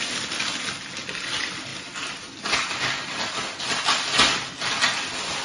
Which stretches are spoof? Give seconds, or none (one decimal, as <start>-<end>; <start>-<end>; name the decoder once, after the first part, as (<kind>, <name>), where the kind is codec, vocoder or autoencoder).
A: none